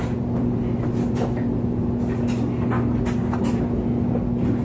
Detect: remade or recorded recorded